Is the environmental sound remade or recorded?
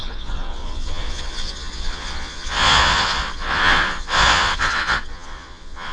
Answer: remade